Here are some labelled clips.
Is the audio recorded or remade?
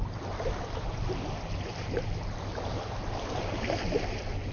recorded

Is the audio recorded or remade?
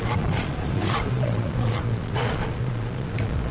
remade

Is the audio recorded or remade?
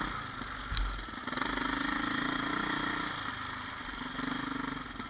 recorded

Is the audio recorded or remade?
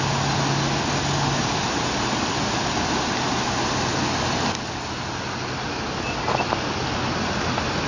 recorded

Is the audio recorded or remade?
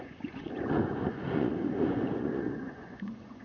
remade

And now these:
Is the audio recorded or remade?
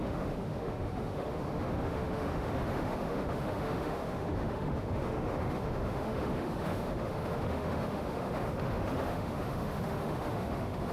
remade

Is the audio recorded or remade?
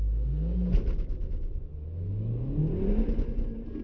recorded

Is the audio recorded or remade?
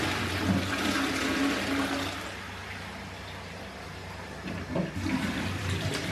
recorded